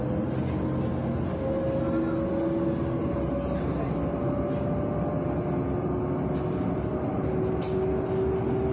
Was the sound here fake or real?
real